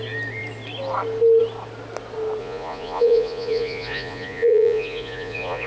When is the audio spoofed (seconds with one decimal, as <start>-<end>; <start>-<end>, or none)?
2.4-5.7